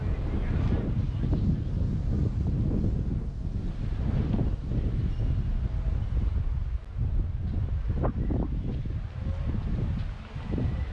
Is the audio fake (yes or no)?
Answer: no